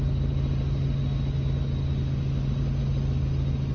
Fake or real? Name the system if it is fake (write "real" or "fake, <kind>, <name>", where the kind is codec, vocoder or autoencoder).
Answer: real